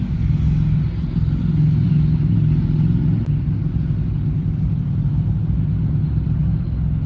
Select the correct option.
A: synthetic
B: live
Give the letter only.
B